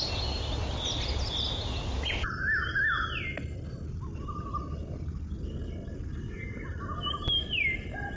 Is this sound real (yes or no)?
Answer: yes